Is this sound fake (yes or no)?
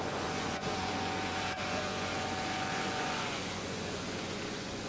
yes